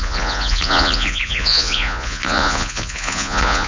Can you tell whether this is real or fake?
fake